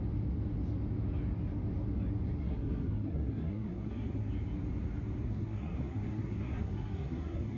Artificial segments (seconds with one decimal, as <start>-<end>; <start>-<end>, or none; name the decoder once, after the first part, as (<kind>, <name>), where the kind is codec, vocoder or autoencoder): 2.4-4.3 (codec, SNAC); 5.2-7.6